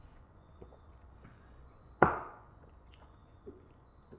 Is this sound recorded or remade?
remade